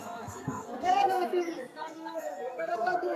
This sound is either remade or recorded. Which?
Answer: remade